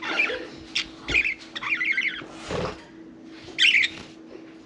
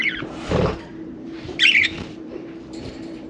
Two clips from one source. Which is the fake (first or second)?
second